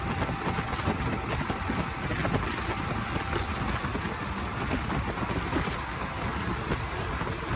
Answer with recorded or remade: recorded